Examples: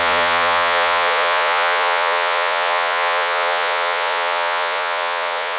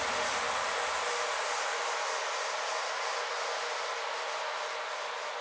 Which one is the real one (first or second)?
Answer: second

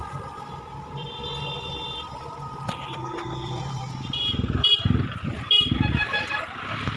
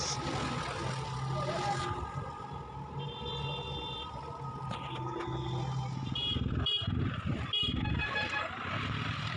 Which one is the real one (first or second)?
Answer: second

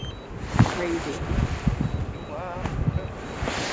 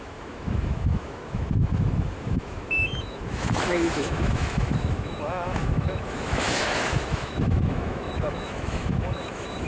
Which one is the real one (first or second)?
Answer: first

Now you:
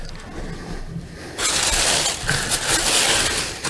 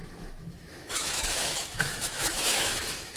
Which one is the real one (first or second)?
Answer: first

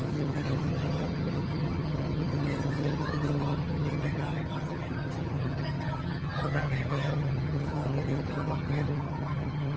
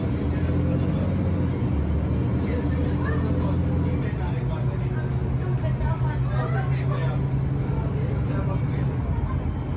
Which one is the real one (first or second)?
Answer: second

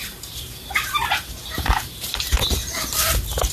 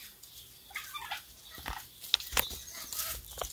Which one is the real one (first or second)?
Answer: second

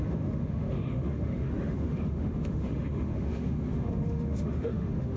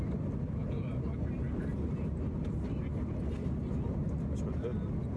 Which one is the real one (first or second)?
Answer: second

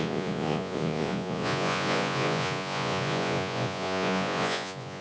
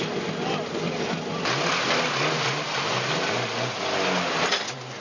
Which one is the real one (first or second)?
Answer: second